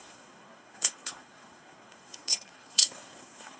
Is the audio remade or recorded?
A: remade